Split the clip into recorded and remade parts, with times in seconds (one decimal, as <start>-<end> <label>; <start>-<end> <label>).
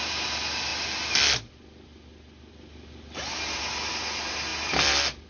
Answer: 0.0-5.3 recorded